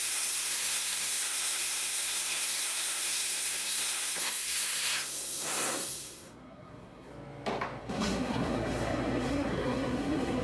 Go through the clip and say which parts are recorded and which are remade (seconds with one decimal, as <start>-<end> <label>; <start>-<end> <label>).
0.0-7.1 remade; 7.1-7.8 recorded; 7.8-10.4 remade